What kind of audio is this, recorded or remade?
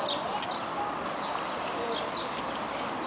recorded